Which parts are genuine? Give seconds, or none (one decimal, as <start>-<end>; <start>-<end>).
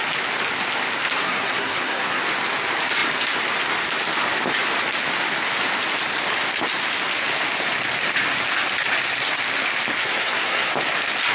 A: 0.0-1.2; 2.2-10.0; 10.7-11.3